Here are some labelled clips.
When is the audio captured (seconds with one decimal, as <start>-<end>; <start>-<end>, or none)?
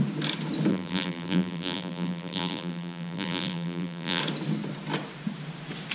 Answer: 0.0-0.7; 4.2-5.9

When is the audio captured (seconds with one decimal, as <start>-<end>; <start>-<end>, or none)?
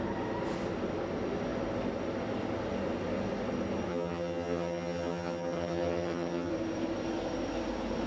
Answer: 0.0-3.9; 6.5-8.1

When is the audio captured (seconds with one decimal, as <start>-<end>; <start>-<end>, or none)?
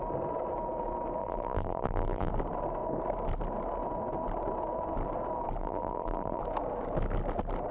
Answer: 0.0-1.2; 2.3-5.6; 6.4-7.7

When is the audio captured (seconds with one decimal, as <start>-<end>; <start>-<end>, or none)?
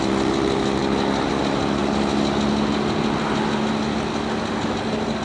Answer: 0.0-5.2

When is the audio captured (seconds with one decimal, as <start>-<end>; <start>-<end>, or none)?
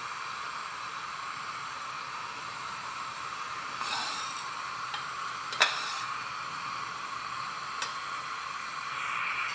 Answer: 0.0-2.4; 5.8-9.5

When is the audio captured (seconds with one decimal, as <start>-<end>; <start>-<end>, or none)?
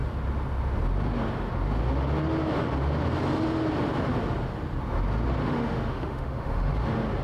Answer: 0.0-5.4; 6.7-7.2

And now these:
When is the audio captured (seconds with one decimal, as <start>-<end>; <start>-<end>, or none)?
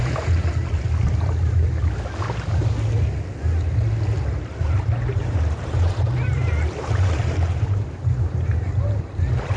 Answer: 0.5-4.6